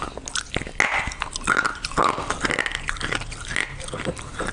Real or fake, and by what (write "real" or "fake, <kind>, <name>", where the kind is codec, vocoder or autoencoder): real